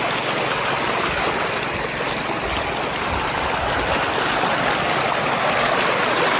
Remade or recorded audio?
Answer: recorded